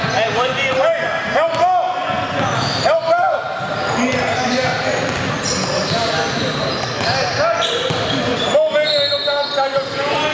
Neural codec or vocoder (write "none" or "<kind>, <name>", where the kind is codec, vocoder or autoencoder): none